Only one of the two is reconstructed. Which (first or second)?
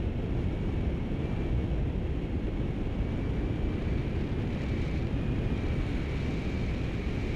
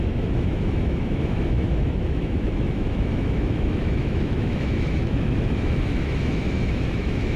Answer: second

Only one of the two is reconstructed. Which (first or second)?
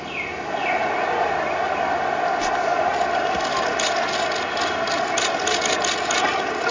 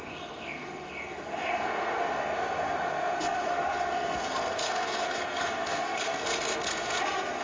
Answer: second